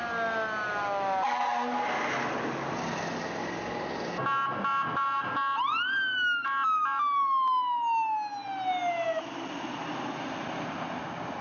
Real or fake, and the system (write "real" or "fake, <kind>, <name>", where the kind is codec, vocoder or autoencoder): real